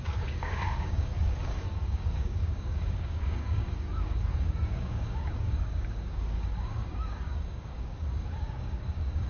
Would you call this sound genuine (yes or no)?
no